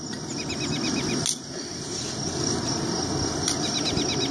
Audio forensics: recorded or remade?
recorded